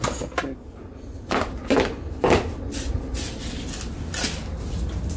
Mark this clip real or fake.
real